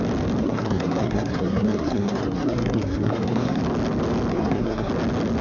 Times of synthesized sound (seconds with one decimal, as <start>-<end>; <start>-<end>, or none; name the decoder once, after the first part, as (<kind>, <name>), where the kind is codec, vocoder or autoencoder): 0.4-3.6 (codec, SNAC); 4.3-4.9